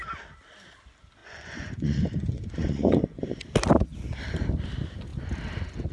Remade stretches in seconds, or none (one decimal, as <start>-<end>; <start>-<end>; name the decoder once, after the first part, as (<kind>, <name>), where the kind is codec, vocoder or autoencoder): 1.2-3.4 (vocoder, Vocos)